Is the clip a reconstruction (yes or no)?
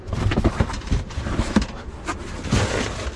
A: yes